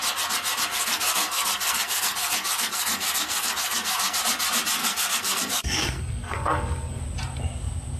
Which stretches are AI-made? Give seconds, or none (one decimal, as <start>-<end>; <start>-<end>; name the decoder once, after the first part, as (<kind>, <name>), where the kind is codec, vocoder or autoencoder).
0.7-4.2 (codec, SNAC); 4.8-7.0